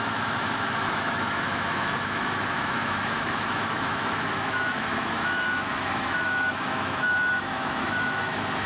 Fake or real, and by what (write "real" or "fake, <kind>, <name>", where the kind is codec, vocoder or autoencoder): fake, autoencoder, DAC-VAE